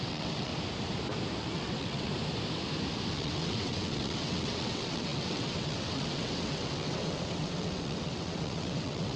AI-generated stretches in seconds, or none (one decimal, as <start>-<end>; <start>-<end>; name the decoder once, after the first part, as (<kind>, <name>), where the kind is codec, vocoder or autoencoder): 0.0-0.5 (vocoder, WaveNeXt); 1.4-2.1; 3.1-9.2